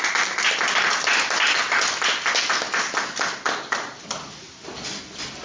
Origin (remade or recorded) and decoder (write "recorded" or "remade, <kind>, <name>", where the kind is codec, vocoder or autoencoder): recorded